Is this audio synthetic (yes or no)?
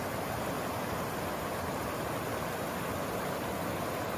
no